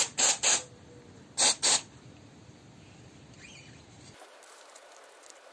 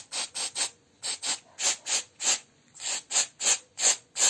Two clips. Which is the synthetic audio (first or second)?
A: second